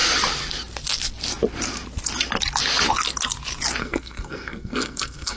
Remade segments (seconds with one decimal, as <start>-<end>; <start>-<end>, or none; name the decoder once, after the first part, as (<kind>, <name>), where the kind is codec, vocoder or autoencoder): 3.8-5.4 (codec, SNAC)